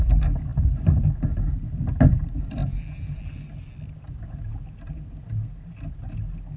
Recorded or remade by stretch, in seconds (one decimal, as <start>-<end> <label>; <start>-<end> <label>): 0.0-6.6 recorded